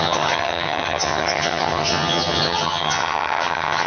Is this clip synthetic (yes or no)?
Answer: yes